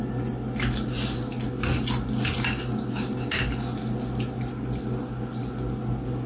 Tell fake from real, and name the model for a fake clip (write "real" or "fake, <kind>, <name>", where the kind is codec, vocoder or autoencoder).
real